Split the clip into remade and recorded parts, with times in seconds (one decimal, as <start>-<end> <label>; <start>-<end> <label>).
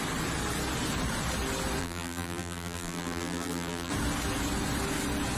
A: 0.0-1.8 recorded; 1.8-3.9 remade; 3.9-5.4 recorded